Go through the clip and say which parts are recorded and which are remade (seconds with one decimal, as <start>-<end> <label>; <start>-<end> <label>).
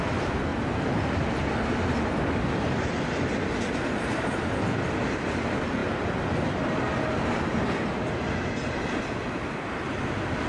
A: 0.0-10.5 recorded